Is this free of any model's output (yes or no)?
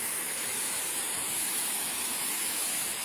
no